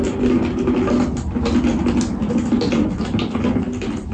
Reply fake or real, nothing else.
real